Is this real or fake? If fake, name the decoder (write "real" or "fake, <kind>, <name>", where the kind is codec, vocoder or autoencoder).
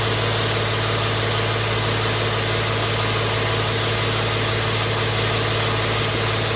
real